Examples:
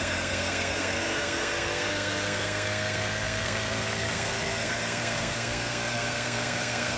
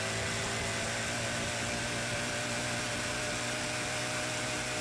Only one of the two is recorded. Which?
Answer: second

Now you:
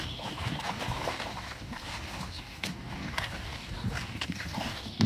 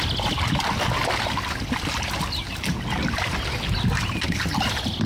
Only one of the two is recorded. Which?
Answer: second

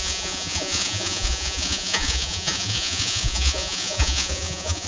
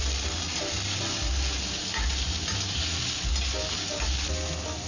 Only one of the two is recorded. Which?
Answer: second